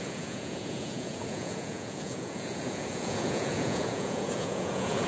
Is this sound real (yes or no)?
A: no